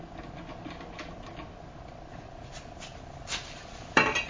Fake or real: real